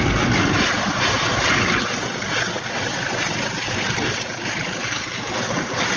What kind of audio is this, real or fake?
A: real